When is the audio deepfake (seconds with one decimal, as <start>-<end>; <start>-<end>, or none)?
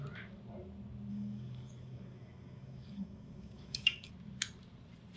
1.1-4.1